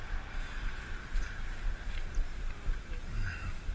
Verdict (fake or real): real